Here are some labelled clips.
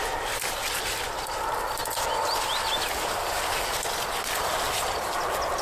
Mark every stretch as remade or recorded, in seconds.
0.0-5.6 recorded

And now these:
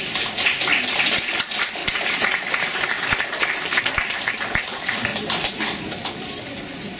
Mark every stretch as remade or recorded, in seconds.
0.0-1.8 remade; 1.8-3.8 recorded; 3.8-5.1 remade; 5.1-6.1 recorded; 6.1-7.0 remade

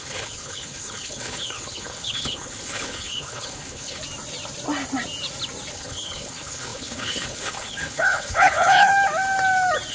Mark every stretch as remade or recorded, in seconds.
0.0-4.0 remade; 4.0-5.7 recorded; 5.7-8.9 remade; 8.9-9.9 recorded

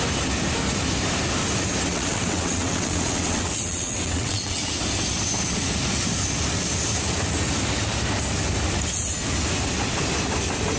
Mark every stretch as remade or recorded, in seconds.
0.0-1.9 recorded; 1.9-4.6 remade; 4.6-10.8 recorded

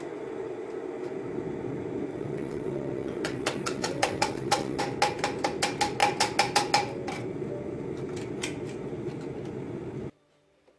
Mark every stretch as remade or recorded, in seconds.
0.0-2.1 recorded; 2.1-4.8 remade; 4.8-10.8 recorded

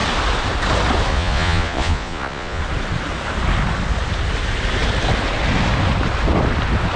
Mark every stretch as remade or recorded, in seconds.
0.0-1.1 recorded; 1.1-2.6 remade; 2.6-7.0 recorded